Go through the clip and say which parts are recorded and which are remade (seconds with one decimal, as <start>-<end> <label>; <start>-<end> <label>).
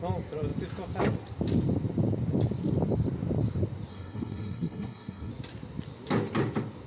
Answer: 0.0-3.9 recorded; 3.9-5.3 remade; 5.3-6.9 recorded